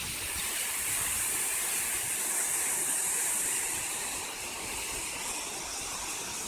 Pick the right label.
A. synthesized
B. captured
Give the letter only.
A